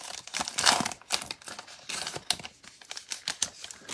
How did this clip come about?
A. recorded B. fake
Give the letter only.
A